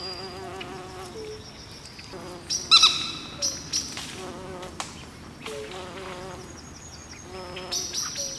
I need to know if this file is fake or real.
real